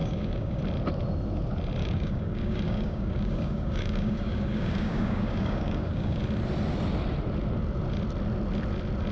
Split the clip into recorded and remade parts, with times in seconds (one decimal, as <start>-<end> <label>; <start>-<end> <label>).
0.0-0.6 remade; 0.6-1.8 recorded; 1.8-6.2 remade; 6.2-9.1 recorded